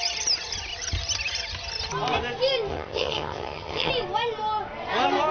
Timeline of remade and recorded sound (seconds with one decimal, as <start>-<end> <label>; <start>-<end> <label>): 0.0-2.7 recorded; 2.7-3.9 remade; 3.9-5.3 recorded